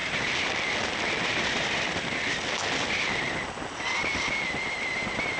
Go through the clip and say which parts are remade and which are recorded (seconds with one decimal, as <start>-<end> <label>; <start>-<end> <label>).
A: 0.0-5.4 recorded